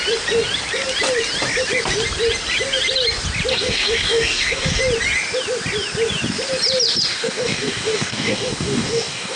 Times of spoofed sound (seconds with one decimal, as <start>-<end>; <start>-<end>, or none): 3.5-4.8; 7.1-9.4